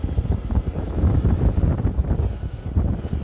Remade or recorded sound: recorded